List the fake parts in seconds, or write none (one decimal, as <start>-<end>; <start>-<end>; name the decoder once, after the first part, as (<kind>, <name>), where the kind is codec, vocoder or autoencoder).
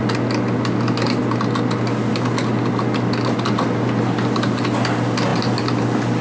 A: none